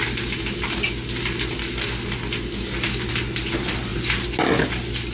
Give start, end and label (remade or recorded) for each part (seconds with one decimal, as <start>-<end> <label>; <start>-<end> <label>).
0.0-5.1 recorded